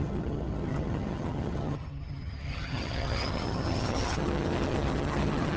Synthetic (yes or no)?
yes